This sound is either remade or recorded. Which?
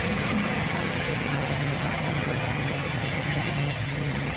remade